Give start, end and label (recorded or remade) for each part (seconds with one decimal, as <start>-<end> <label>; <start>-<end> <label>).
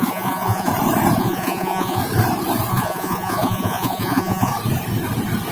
0.0-0.7 remade; 0.7-1.2 recorded; 1.2-2.0 remade; 2.0-2.7 recorded; 2.7-4.5 remade; 4.5-5.5 recorded